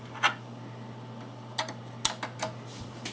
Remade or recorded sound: recorded